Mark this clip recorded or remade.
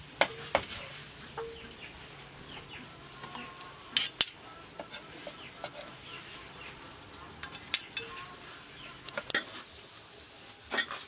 recorded